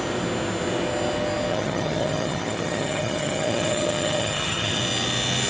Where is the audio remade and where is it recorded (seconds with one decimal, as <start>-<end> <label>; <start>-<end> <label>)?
0.0-1.5 recorded; 1.5-4.8 remade; 4.8-5.5 recorded